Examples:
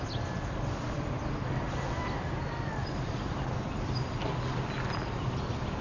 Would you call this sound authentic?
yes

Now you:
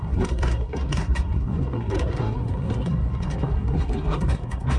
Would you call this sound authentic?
no